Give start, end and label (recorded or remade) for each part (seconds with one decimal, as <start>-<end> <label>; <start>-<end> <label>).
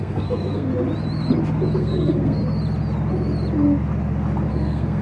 0.0-0.7 remade; 0.7-1.8 recorded; 1.8-2.4 remade; 2.4-4.5 recorded; 4.5-5.0 remade